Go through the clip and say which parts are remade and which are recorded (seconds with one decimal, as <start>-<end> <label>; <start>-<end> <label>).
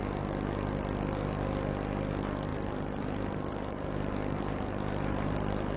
0.0-2.5 recorded; 2.5-5.8 remade